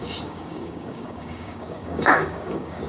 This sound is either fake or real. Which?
fake